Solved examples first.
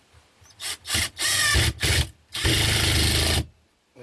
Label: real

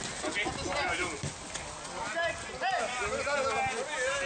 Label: real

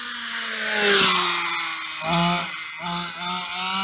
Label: real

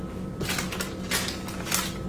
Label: real